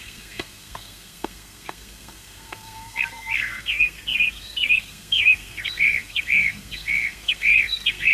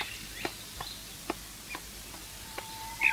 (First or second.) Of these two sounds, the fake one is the first